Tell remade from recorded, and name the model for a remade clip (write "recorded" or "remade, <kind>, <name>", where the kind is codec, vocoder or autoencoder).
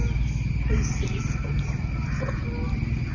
recorded